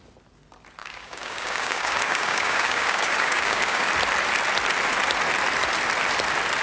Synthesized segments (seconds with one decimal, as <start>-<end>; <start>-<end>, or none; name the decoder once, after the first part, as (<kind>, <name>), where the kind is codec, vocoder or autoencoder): 0.8-3.9 (codec, DAC)